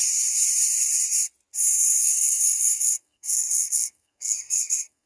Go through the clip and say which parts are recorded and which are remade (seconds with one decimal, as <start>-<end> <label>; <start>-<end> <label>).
0.0-2.0 recorded; 2.0-5.1 remade